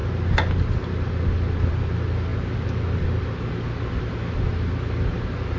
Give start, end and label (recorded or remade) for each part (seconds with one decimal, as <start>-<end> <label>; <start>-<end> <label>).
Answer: 0.0-5.6 recorded